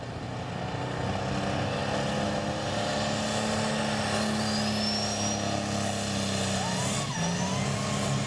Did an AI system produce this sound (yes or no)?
no